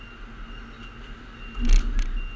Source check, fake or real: real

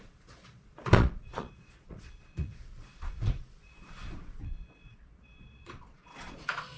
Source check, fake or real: fake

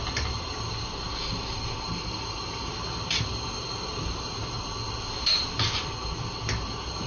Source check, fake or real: real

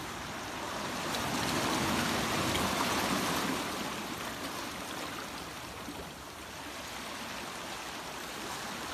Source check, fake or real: real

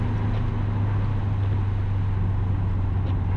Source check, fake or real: real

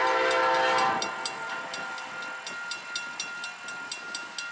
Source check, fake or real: real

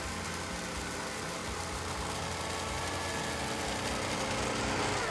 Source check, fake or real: real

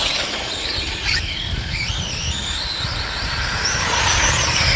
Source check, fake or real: real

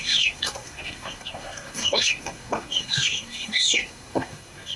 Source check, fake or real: fake